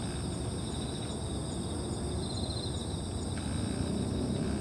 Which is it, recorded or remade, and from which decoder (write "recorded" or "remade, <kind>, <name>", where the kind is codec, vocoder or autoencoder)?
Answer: recorded